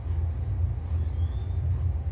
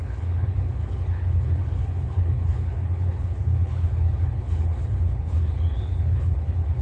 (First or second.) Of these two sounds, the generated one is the second